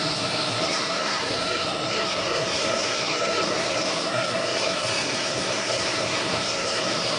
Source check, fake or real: fake